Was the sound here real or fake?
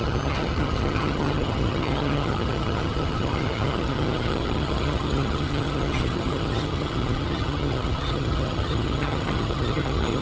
fake